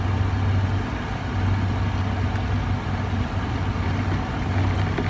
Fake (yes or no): no